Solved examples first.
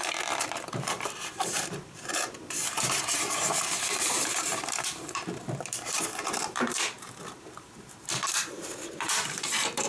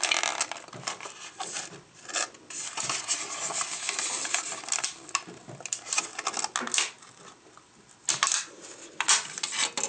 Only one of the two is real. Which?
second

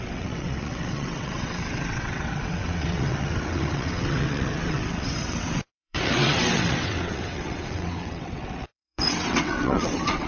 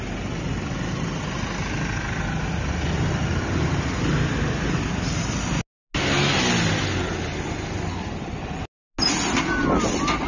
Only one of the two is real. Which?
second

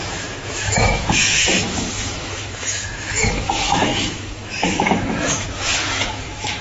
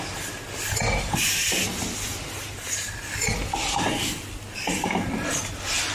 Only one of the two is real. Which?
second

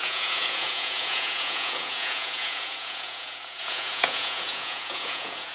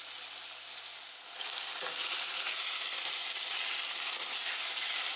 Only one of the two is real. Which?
second